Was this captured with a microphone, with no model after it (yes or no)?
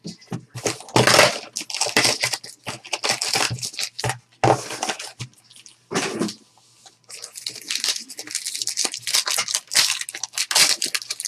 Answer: yes